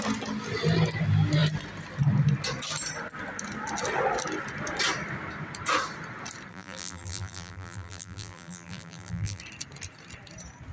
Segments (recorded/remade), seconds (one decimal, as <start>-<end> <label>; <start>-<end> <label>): 0.0-6.5 recorded; 6.5-9.4 remade; 9.4-10.7 recorded